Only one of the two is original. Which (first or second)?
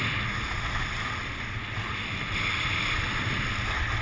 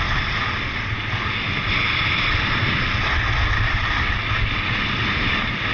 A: first